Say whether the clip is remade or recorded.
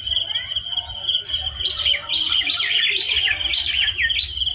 recorded